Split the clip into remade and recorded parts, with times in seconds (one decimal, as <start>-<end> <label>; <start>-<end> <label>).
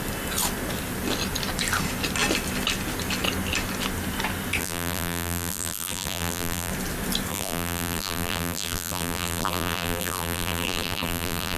0.0-4.6 recorded; 4.6-6.7 remade; 6.7-7.3 recorded; 7.3-11.6 remade